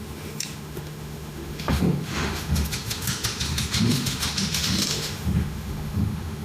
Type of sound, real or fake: fake